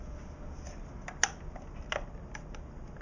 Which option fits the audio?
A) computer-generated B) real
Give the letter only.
B